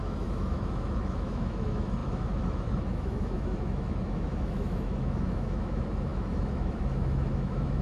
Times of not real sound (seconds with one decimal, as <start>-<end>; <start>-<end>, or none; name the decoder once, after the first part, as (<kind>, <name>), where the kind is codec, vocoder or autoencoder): 0.0-7.8 (autoencoder, DAC-VAE)